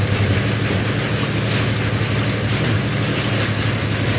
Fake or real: real